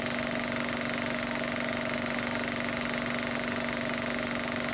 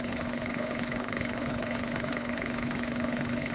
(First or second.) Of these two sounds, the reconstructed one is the second